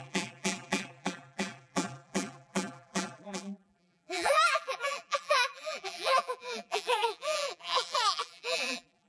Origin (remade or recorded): remade